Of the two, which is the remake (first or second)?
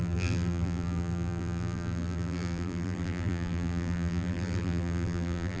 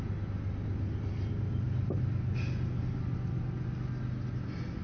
first